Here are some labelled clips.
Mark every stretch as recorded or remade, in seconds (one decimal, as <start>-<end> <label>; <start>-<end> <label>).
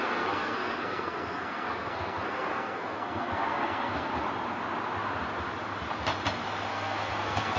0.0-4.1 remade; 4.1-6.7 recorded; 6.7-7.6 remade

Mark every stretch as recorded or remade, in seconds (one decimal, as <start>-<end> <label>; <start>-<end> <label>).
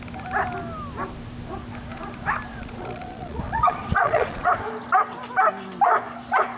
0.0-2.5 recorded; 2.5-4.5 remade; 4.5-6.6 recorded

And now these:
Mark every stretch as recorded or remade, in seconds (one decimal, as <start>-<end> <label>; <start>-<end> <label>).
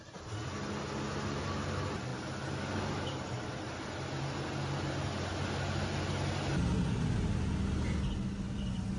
0.0-9.0 recorded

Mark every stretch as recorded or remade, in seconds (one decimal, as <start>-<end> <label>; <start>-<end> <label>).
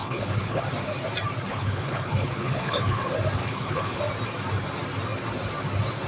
0.0-0.6 remade; 0.6-1.5 recorded; 1.5-3.0 remade; 3.0-3.4 recorded; 3.4-4.0 remade; 4.0-6.1 recorded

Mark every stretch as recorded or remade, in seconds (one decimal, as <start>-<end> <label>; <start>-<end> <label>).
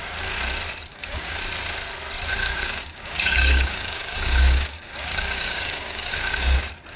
0.0-0.9 recorded; 0.9-1.4 remade; 1.4-2.4 recorded; 2.4-6.6 remade; 6.6-7.0 recorded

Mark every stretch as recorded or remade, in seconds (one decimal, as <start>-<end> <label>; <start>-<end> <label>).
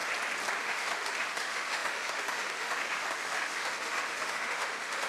0.0-0.6 recorded; 0.6-5.1 remade